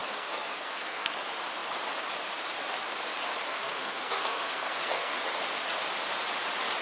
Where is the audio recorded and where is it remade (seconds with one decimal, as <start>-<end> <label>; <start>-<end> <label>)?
0.0-1.1 remade; 1.1-3.5 recorded; 3.5-5.2 remade; 5.2-6.8 recorded